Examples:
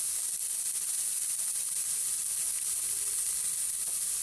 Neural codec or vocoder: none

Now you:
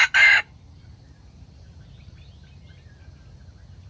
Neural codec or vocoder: none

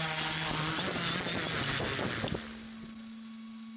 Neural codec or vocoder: none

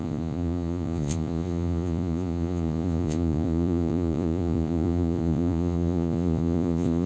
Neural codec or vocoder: vocoder, Vocos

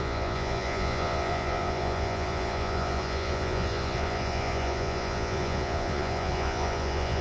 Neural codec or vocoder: vocoder, Vocos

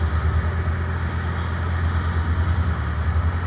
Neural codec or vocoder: none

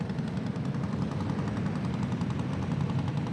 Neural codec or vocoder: none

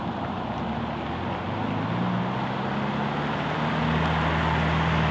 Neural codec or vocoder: none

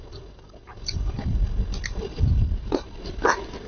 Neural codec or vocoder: none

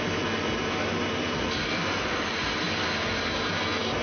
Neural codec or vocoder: none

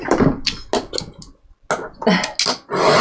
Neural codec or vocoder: none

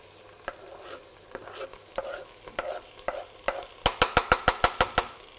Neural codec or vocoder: none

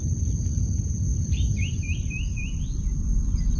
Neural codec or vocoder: none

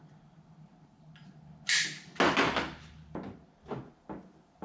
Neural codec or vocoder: none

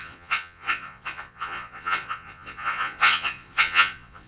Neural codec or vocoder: vocoder, Vocos